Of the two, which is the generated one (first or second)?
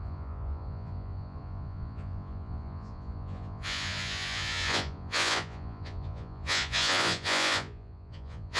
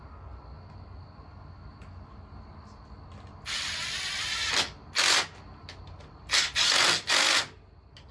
first